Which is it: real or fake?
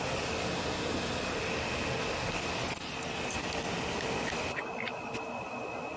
real